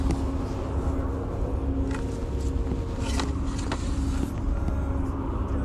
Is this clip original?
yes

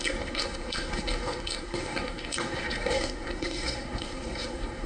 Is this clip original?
no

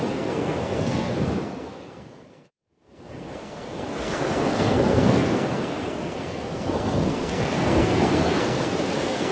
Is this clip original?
no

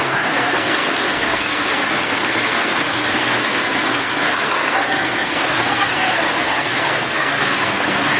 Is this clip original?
no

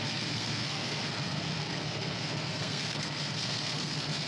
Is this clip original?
no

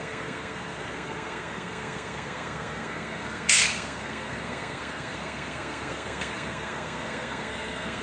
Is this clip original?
no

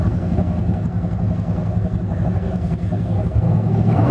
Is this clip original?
no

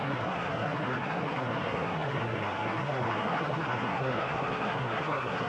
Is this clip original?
no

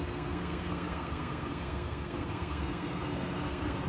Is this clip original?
no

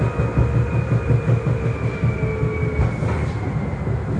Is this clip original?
yes